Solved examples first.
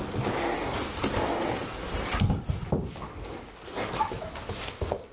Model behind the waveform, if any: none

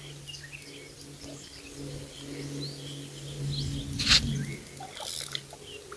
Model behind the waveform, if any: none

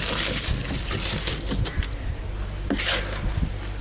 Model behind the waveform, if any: none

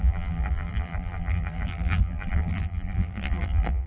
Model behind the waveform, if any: vocoder, BigVGAN v2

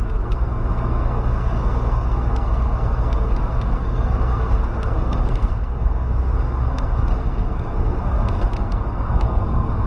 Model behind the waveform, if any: codec, SNAC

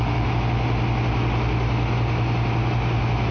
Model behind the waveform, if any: none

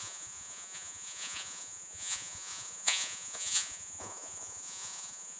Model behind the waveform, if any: vocoder, Vocos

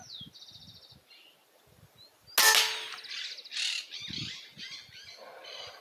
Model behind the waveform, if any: none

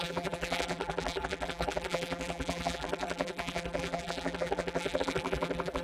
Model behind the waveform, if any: vocoder, BigVGAN v2